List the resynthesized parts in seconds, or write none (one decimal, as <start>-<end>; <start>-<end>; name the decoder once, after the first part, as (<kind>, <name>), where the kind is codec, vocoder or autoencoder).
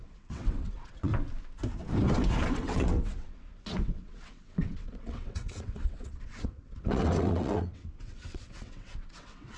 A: 0.0-1.1 (vocoder, WaveNeXt); 2.5-9.6